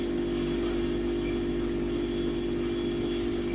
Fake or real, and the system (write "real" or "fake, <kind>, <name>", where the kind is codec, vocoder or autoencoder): real